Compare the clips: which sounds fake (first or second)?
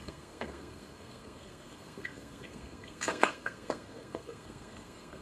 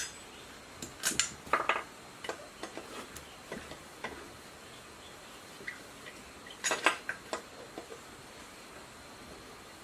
first